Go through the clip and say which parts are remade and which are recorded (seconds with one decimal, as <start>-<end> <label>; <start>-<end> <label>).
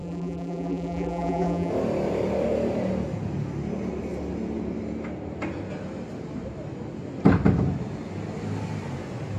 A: 0.0-1.7 remade; 1.7-9.4 recorded